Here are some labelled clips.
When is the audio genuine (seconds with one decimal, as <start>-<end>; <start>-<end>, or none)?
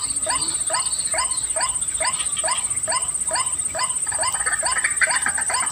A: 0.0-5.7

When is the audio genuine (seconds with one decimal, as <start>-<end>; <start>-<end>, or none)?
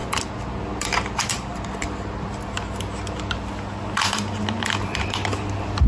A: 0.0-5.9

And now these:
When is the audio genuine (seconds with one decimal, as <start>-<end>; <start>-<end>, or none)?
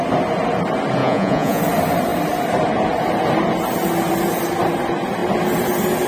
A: 0.0-1.0; 1.6-6.1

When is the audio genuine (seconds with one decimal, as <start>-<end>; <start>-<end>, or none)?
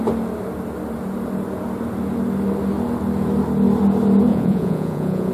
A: 0.0-4.3